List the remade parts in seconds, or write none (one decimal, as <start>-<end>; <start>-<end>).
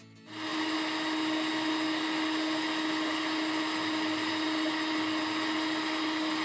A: none